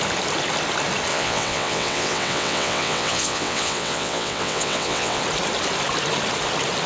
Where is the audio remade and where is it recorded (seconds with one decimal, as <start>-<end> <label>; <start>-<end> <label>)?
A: 0.0-1.1 recorded; 1.1-5.2 remade; 5.2-6.9 recorded